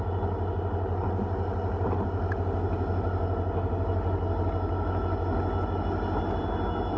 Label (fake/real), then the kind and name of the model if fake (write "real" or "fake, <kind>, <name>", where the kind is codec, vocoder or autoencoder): real